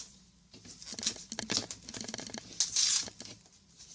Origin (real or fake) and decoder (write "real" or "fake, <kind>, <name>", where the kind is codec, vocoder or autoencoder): real